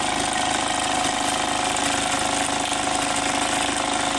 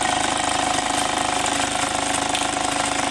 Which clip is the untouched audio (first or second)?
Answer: first